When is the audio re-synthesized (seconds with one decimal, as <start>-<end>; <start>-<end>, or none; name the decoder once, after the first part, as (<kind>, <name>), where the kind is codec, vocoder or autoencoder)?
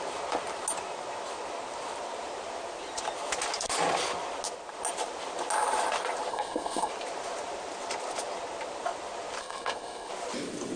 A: 6.3-6.9 (codec, SNAC); 9.4-10.1